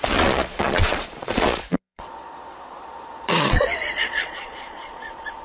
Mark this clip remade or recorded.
remade